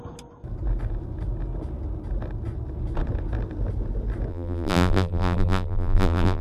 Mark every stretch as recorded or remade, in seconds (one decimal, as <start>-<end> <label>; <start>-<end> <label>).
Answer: 0.0-4.3 recorded; 4.3-6.4 remade